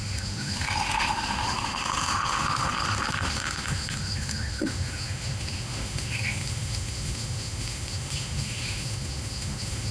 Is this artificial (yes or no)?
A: yes